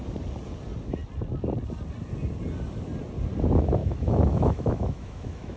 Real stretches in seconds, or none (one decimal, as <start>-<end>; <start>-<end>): 0.0-3.8